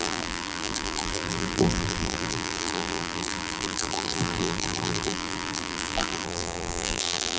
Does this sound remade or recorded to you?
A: remade